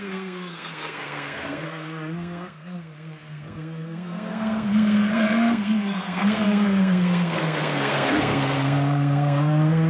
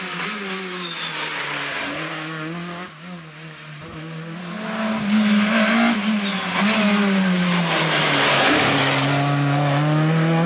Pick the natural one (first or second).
second